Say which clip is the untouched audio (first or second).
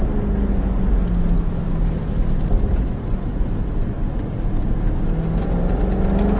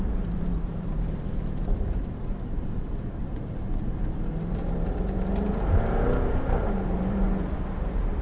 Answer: first